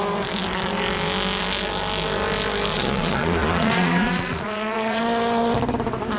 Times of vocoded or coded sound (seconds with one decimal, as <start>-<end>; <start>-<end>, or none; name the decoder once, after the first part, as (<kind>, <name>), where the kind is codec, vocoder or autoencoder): 2.7-5.0 (vocoder, Vocos)